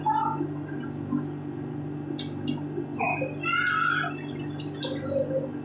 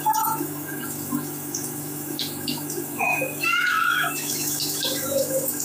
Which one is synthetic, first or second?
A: second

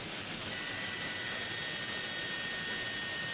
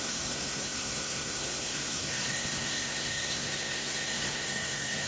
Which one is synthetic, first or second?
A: second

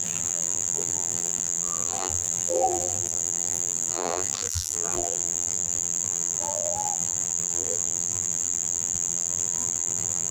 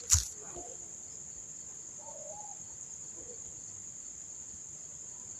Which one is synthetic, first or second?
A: first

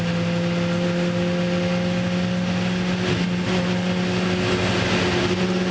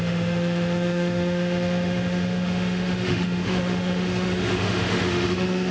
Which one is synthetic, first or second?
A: second